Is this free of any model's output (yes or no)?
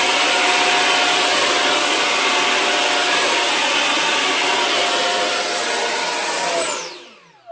yes